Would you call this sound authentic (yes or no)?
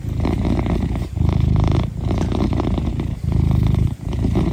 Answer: no